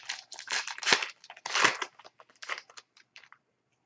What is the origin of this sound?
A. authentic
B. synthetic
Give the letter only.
B